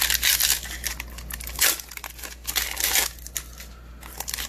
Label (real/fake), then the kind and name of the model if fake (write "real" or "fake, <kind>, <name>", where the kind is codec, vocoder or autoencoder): real